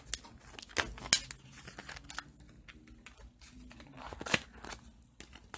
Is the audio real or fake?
real